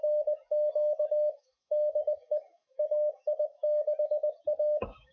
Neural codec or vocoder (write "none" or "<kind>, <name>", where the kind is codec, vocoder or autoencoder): autoencoder, DAC-VAE